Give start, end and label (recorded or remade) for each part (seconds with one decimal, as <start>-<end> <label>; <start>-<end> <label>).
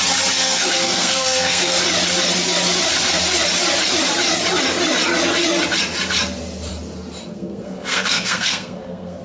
0.0-0.4 recorded; 0.4-1.8 remade; 1.8-7.3 recorded; 7.3-9.2 remade